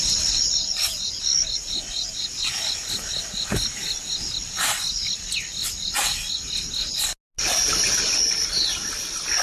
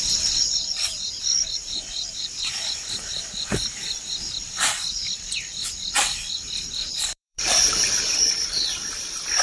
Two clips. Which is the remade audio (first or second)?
second